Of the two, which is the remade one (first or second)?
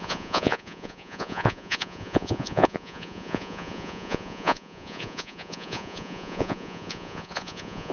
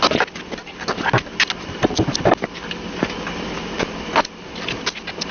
first